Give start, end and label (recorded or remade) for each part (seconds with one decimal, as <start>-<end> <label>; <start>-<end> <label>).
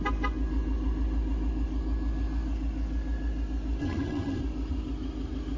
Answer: 0.0-3.8 recorded; 3.8-4.4 remade; 4.4-5.6 recorded